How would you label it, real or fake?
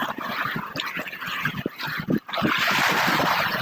fake